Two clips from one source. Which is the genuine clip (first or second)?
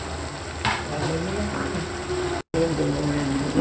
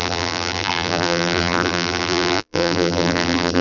first